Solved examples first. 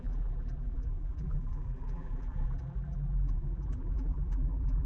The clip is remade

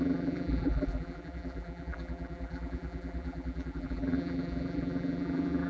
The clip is remade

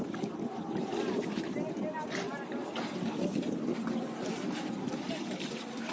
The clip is recorded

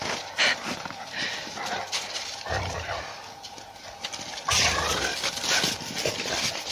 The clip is recorded